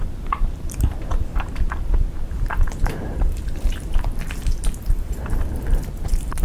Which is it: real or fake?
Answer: fake